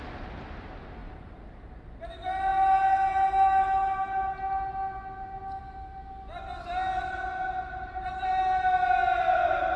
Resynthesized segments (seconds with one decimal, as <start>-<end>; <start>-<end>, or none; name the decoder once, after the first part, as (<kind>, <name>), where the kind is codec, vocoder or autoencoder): 1.0-1.6 (vocoder, BigVGAN v2)